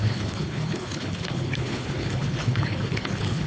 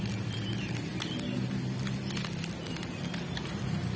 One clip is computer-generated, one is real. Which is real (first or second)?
second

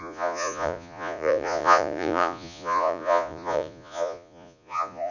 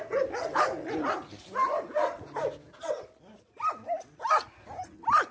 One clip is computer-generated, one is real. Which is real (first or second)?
second